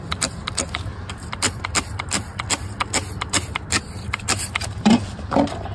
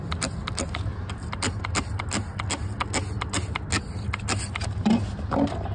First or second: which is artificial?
first